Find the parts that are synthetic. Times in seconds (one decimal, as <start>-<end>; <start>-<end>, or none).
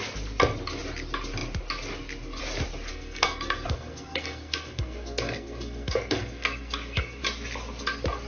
2.9-7.2